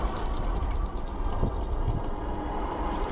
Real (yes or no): yes